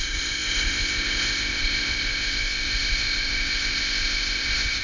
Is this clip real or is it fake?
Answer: fake